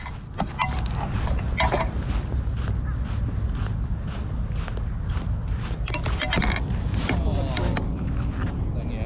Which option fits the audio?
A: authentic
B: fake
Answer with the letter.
A